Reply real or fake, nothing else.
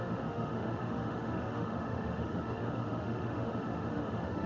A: fake